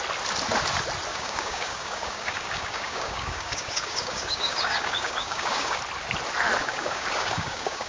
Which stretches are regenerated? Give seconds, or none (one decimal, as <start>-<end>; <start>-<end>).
1.1-5.8; 6.6-7.9